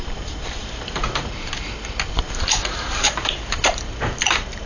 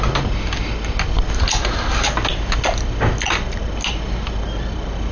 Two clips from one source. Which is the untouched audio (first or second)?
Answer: second